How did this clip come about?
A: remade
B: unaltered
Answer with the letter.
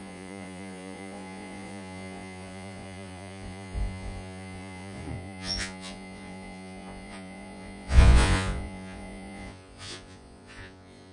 A